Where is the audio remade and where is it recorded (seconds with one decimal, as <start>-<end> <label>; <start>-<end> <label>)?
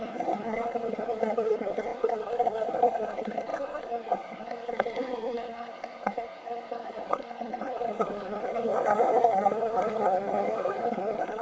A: 0.0-11.4 remade